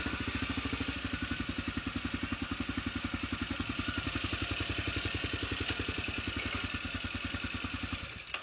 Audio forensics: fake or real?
real